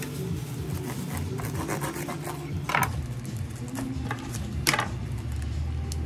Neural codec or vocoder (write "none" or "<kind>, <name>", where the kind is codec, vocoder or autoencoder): none